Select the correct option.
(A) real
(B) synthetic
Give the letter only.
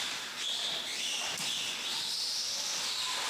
A